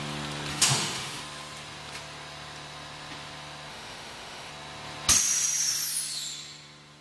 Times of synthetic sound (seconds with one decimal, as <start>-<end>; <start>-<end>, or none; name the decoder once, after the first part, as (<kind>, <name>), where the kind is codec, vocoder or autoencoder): 0.5-1.2 (autoencoder, DAC-VAE); 3.7-4.5